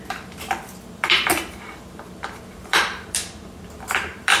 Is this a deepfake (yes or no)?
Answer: yes